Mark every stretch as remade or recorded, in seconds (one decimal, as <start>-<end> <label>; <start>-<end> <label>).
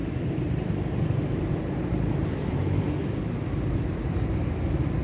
0.0-2.8 remade; 2.8-3.2 recorded; 3.2-4.5 remade; 4.5-5.0 recorded